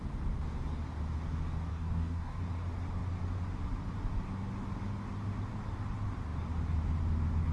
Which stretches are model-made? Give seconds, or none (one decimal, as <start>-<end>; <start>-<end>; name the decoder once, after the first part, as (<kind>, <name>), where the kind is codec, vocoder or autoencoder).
1.7-2.4 (codec, DAC)